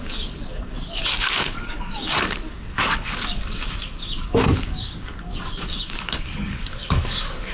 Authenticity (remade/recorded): remade